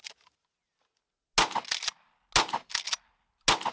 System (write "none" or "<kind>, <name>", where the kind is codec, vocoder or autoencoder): none